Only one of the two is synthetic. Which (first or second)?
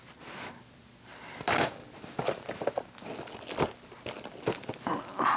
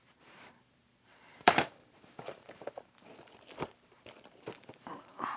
second